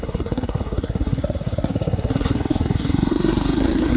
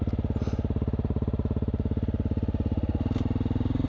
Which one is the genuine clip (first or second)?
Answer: second